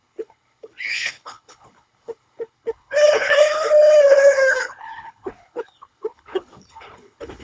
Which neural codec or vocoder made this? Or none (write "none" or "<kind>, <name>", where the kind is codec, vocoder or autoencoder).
codec, HILCodec